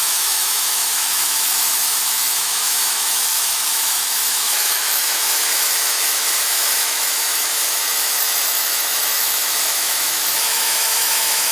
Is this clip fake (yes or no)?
yes